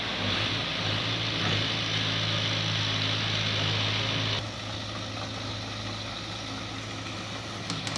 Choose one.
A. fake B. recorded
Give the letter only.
B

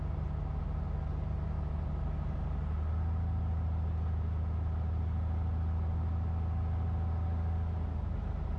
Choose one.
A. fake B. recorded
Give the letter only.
B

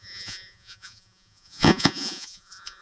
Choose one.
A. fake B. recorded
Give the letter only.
A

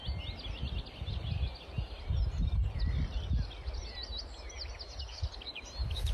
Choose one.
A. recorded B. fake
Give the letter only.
A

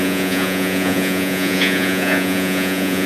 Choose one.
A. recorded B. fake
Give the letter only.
B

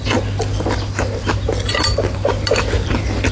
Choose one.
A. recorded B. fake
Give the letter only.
A